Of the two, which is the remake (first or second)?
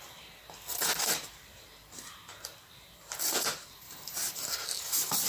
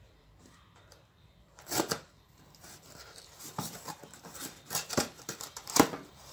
second